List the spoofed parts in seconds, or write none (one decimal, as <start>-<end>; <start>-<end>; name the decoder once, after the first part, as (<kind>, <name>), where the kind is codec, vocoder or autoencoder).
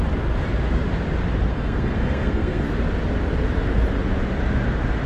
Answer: 1.5-2.7 (codec, SNAC)